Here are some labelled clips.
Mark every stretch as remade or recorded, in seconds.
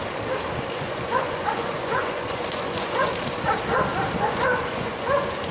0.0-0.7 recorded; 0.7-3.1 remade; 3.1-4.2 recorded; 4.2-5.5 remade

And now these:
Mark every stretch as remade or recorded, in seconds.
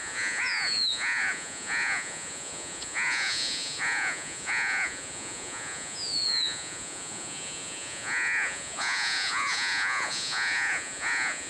0.0-11.5 remade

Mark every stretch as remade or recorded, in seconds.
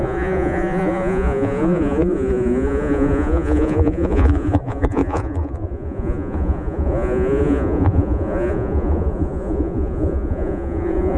0.0-11.2 remade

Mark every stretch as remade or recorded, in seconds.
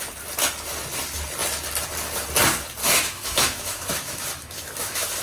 0.0-2.8 recorded; 2.8-5.2 remade